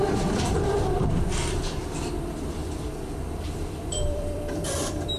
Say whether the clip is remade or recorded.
remade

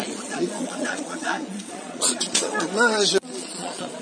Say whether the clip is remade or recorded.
remade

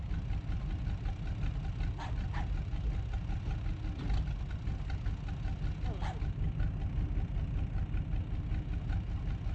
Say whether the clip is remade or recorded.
recorded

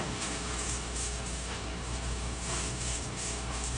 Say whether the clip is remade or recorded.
remade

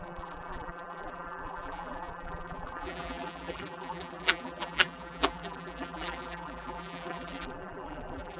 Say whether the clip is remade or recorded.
remade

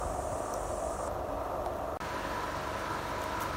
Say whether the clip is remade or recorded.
recorded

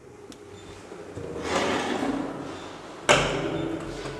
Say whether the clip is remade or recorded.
recorded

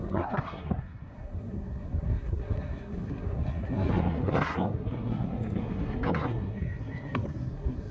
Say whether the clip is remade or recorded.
remade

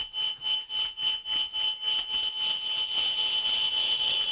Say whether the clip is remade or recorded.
recorded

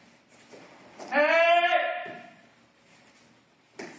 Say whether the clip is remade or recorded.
recorded